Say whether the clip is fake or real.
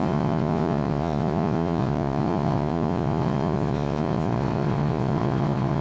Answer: fake